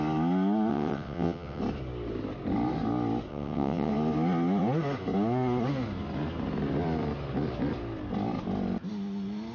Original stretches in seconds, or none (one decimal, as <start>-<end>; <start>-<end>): 0.0-0.7; 1.6-3.3; 3.9-9.5